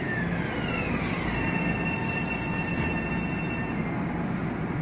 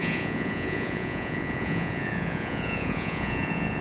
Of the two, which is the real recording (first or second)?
first